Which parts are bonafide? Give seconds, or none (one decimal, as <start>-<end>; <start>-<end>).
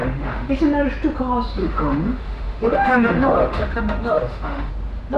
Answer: 0.6-1.6; 4.7-5.2